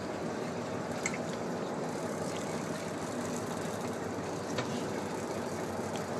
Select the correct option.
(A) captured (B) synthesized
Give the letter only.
A